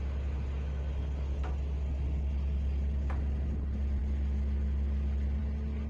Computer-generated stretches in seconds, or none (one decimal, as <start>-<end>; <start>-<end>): none